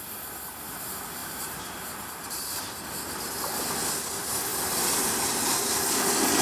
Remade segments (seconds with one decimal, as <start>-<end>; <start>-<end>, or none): 1.2-2.6